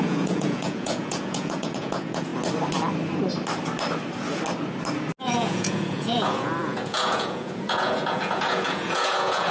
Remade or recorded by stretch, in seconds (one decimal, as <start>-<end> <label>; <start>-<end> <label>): 0.0-2.3 remade; 2.3-5.2 recorded; 5.2-9.5 remade